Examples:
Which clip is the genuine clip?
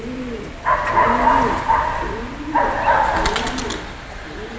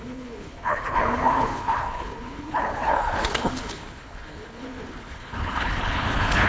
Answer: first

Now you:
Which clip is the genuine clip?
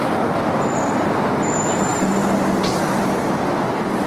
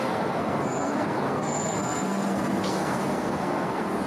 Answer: first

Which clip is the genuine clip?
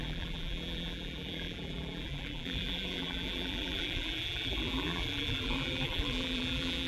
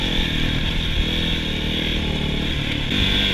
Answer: second